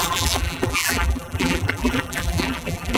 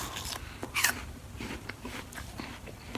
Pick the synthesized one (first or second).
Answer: first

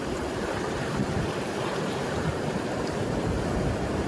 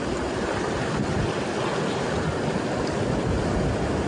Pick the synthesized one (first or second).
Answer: first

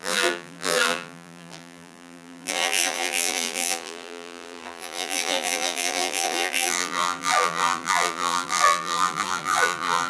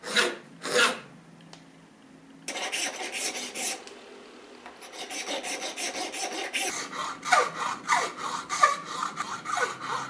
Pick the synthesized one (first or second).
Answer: first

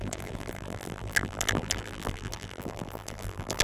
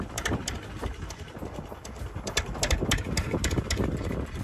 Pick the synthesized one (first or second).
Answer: first